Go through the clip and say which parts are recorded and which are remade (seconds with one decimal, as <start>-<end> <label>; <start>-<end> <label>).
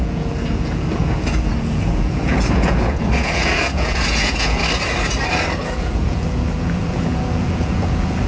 0.0-4.6 remade; 4.6-5.6 recorded; 5.6-8.3 remade